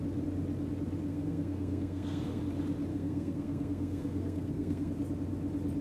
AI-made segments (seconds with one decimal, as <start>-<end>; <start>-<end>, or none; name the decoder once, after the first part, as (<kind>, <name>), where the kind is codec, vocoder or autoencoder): 1.1-2.4 (codec, SNAC); 2.9-4.9

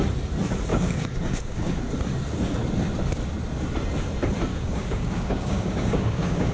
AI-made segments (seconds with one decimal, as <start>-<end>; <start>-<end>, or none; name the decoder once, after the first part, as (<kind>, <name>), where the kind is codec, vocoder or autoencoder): 0.7-1.8 (codec, DAC); 4.5-6.5

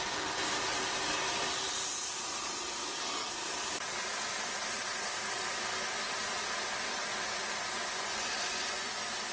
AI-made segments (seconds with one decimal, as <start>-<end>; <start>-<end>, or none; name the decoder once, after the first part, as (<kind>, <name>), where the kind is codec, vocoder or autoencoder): 7.8-8.9 (vocoder, Vocos)

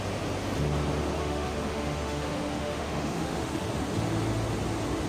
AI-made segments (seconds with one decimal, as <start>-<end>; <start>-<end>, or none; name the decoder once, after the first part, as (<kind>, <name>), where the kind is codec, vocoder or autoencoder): 1.2-3.7 (autoencoder, DAC-VAE)

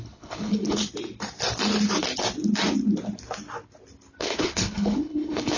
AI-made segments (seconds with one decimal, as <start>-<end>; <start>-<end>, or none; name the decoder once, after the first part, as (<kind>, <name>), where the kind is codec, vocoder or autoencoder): 0.0-0.8 (codec, HILCodec); 4.2-5.6

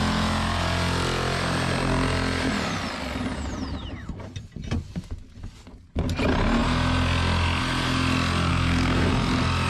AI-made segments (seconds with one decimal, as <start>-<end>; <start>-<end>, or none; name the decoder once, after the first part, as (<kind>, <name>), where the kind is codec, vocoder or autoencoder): 8.5-9.1 (codec, SNAC)

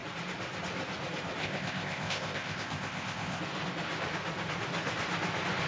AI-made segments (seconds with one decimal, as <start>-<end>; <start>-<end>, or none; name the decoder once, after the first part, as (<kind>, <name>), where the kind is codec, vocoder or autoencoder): 1.4-3.4 (codec, ZipCodec)

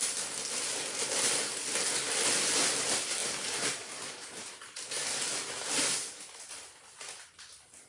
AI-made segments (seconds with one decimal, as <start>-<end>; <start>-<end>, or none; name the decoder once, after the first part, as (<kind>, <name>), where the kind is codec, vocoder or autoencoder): none